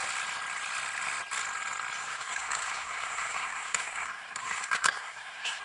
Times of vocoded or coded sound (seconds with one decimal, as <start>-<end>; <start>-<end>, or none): 2.0-5.6